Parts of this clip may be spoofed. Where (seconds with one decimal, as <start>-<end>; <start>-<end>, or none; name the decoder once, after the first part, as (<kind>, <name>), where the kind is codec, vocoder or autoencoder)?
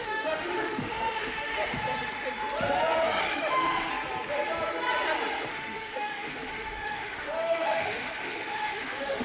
0.0-1.5 (autoencoder, DAC-VAE); 3.2-3.9; 5.5-9.2